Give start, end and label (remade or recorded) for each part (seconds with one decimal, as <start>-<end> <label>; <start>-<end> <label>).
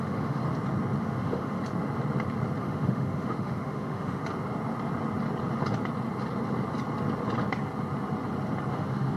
0.0-0.4 remade; 0.4-1.0 recorded; 1.0-1.6 remade; 1.6-2.6 recorded; 2.6-4.2 remade; 4.2-8.7 recorded; 8.7-9.2 remade